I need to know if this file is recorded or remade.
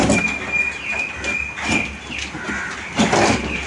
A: recorded